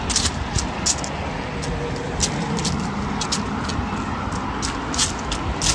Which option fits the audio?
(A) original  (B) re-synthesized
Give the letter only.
A